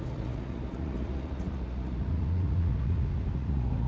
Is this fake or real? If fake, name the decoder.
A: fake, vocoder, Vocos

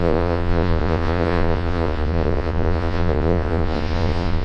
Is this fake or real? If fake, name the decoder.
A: fake, vocoder, Vocos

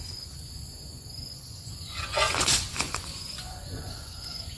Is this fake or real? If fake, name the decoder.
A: fake, vocoder, Vocos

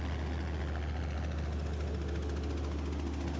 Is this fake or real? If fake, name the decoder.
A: real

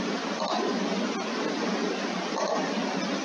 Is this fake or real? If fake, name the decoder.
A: real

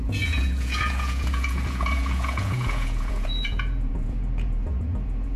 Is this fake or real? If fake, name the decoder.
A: fake, vocoder, Vocos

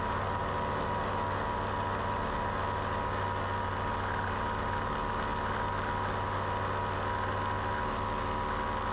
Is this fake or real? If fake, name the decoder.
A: real